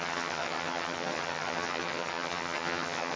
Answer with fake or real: fake